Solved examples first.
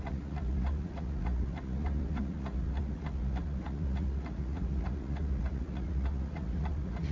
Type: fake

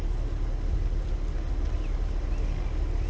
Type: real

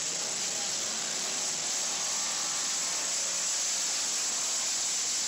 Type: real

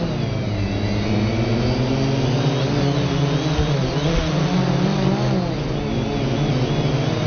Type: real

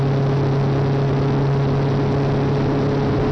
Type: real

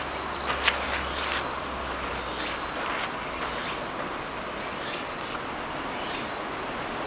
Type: real